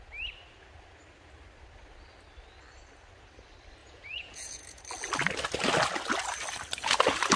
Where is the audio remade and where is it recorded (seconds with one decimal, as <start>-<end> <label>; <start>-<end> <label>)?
0.0-3.8 recorded; 3.8-4.8 remade; 4.8-7.4 recorded